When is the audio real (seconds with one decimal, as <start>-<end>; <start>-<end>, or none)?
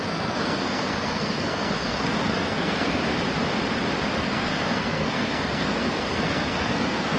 3.0-4.2